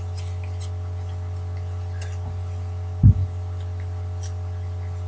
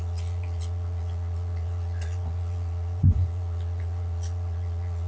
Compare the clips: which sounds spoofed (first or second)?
second